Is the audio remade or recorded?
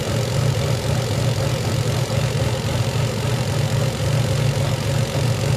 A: recorded